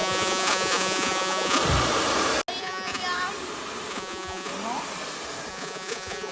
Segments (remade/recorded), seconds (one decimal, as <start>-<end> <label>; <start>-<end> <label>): 0.0-1.6 remade; 1.6-2.6 recorded; 2.6-3.0 remade; 3.0-3.9 recorded; 3.9-4.5 remade; 4.5-5.5 recorded; 5.5-6.3 remade